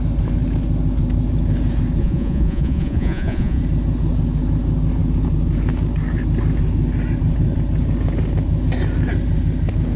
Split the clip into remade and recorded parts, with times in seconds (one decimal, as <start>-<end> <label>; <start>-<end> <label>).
0.0-2.0 recorded; 2.0-3.6 remade; 3.6-10.0 recorded

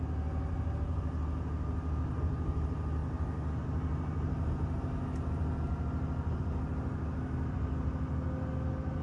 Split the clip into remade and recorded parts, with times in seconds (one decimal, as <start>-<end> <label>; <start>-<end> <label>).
0.0-9.0 recorded

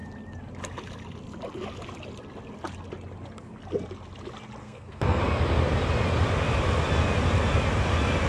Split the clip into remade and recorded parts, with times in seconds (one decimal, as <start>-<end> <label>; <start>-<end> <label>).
0.0-4.6 recorded; 4.6-5.2 remade; 5.2-8.3 recorded

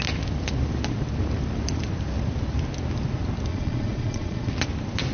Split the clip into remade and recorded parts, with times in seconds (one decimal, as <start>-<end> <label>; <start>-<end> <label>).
0.0-3.5 recorded; 3.5-4.5 remade; 4.5-5.1 recorded

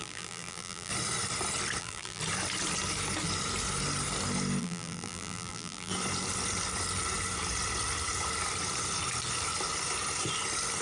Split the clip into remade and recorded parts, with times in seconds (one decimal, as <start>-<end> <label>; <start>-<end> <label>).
0.0-0.9 remade; 0.9-1.8 recorded; 1.8-2.2 remade; 2.2-4.6 recorded; 4.6-5.9 remade; 5.9-10.8 recorded

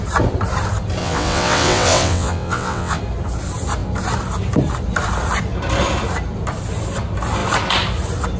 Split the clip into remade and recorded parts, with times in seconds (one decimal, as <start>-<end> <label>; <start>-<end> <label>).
0.0-1.0 recorded; 1.0-3.0 remade; 3.0-8.4 recorded

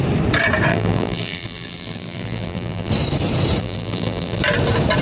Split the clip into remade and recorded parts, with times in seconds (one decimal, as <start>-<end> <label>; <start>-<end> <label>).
0.0-0.7 recorded; 0.7-2.9 remade; 2.9-3.6 recorded; 3.6-4.4 remade; 4.4-5.0 recorded